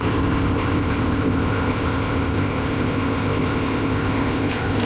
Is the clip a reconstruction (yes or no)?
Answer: yes